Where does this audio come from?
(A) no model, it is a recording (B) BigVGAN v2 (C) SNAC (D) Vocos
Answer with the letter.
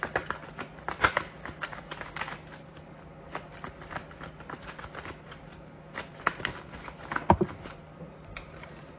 A